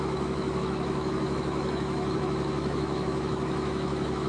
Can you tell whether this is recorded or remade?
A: remade